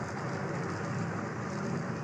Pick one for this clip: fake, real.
real